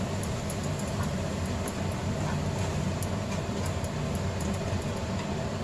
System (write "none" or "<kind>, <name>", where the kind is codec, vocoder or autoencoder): none